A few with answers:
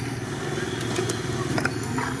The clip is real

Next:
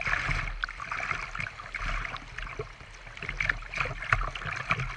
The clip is real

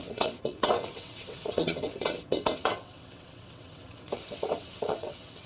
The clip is fake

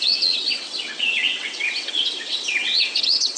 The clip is fake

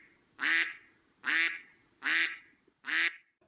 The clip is real